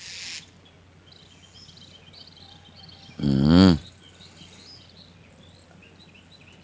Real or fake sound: real